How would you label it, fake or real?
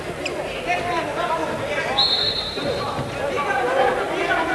real